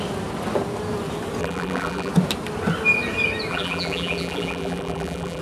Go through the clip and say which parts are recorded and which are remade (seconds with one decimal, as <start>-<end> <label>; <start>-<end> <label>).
0.0-1.4 recorded; 1.4-2.1 remade; 2.1-3.5 recorded; 3.5-5.4 remade